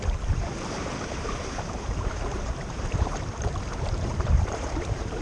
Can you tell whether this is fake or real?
fake